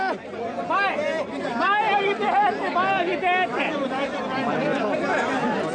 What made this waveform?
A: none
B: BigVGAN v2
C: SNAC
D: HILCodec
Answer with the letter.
A